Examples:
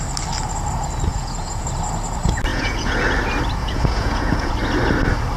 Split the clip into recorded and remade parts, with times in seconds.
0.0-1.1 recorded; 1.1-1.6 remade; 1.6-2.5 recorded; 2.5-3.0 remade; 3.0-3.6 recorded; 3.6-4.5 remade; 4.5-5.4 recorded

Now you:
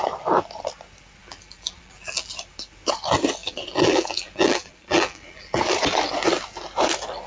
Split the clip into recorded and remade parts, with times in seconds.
0.0-1.2 recorded; 1.2-2.3 remade; 2.3-3.4 recorded; 3.4-5.6 remade; 5.6-7.3 recorded